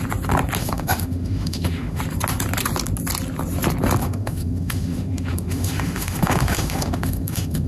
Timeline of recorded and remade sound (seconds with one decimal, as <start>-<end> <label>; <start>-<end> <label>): 0.0-0.6 recorded; 0.6-2.0 remade; 2.0-4.0 recorded; 4.0-7.7 remade